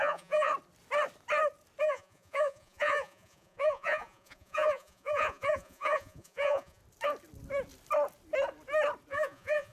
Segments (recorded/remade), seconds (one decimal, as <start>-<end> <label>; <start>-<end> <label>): 0.0-0.5 remade; 0.5-1.8 recorded; 1.8-6.8 remade; 6.8-9.1 recorded; 9.1-9.7 remade